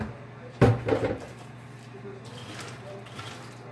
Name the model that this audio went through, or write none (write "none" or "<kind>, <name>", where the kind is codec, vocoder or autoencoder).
none